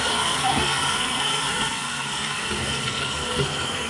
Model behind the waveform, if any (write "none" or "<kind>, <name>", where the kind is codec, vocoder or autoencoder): codec, SNAC